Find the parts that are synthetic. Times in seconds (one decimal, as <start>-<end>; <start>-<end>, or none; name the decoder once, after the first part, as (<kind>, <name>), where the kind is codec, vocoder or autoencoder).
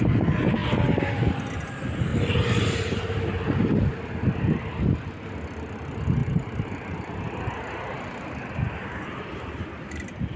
2.1-3.9 (vocoder, BigVGAN v2); 6.2-7.4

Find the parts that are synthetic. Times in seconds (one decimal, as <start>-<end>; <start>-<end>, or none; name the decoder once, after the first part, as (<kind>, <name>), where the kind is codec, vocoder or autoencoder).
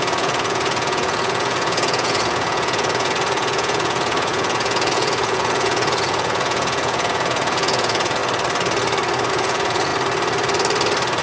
0.0-8.2 (vocoder, Vocos); 9.3-9.9